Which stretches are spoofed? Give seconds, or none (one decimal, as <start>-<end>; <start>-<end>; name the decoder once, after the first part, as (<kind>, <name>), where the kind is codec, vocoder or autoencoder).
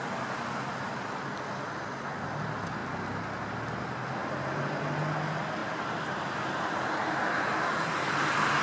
4.2-4.8 (vocoder, BigVGAN v2); 5.6-7.4